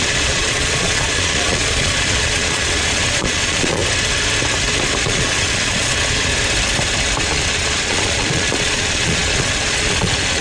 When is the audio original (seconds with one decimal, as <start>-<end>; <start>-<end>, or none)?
3.8-5.0; 6.3-7.2